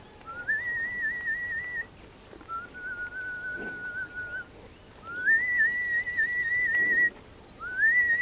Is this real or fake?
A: real